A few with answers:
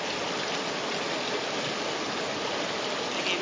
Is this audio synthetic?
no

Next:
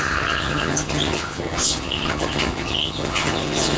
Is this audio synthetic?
yes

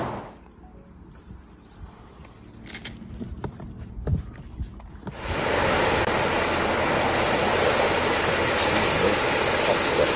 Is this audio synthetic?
no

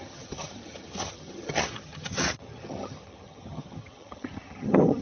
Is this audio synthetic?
yes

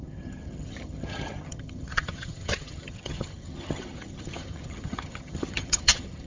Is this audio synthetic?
yes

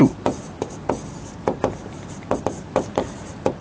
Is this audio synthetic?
no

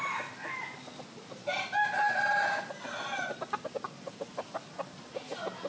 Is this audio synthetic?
no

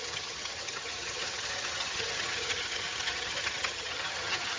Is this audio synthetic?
yes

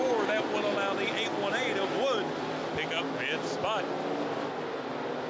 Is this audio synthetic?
no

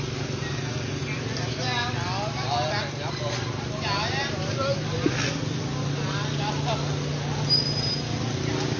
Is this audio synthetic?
no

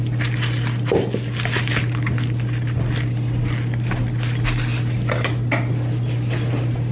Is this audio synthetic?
no